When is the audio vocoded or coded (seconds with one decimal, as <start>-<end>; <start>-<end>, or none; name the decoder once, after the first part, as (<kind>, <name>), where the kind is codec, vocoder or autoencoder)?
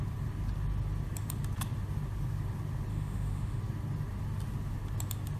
2.9-3.6 (autoencoder, DAC-VAE)